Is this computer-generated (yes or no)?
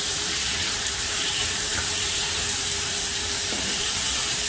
yes